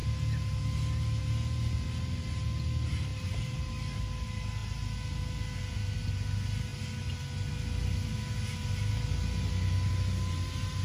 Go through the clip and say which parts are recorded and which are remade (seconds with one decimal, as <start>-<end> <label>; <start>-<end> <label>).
0.0-3.1 recorded; 3.1-3.7 remade; 3.7-10.8 recorded